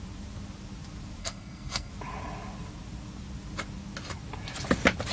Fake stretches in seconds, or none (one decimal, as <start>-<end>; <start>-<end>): 1.2-1.9